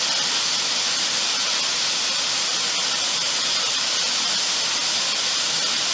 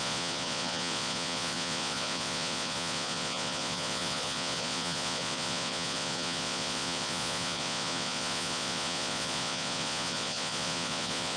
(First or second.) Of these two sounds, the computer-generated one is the second